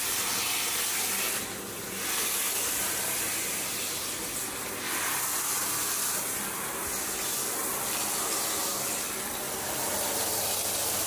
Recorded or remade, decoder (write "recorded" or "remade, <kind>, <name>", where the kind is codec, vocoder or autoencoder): recorded